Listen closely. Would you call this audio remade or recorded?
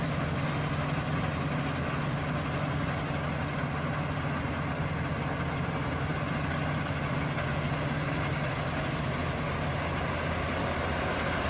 recorded